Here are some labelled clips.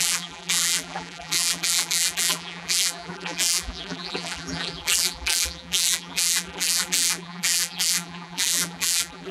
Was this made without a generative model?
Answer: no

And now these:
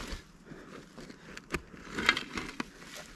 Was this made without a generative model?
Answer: yes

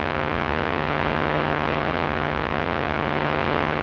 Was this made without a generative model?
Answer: no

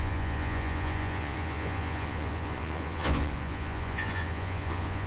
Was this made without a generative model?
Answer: no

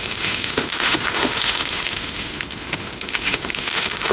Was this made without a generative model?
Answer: no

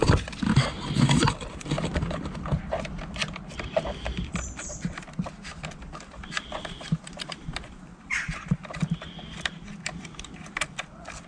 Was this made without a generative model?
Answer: no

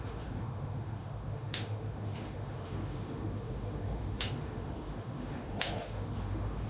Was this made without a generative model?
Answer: no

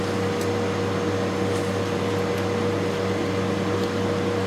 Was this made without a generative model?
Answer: yes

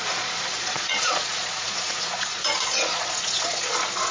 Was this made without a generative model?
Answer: no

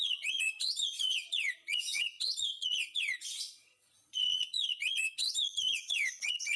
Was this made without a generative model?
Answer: no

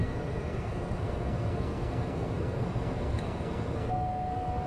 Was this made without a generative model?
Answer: no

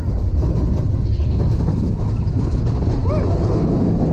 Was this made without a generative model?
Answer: yes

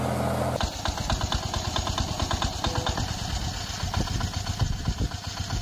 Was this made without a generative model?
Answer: yes